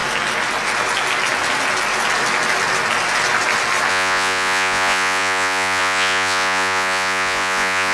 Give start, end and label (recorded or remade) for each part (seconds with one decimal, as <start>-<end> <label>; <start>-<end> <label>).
0.0-3.9 recorded; 3.9-7.9 remade